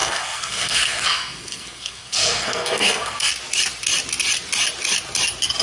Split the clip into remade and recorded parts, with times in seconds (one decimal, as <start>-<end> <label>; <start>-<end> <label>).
0.0-3.3 remade; 3.3-5.6 recorded